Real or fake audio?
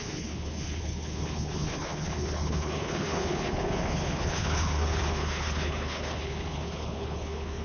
fake